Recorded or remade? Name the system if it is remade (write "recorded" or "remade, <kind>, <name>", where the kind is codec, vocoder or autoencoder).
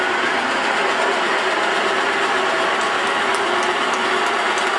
recorded